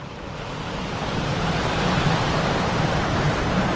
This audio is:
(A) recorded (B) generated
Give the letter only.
B